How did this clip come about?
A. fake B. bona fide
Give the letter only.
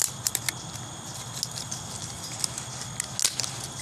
B